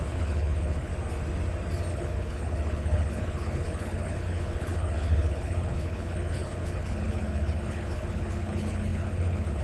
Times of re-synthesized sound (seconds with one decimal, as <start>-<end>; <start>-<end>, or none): 0.0-0.9; 1.9-9.6